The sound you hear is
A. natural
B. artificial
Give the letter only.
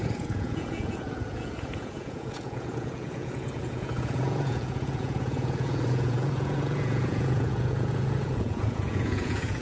B